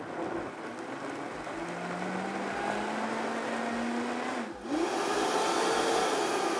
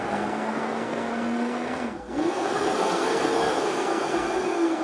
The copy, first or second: second